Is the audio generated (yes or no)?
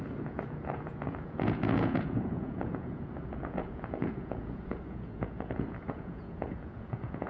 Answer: yes